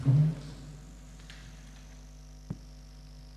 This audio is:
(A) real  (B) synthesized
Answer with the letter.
A